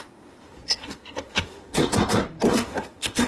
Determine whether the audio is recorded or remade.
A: remade